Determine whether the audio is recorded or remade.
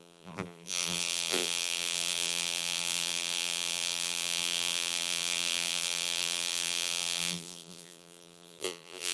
remade